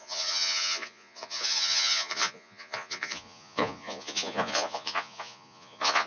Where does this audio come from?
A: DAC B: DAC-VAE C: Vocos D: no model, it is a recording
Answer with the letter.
C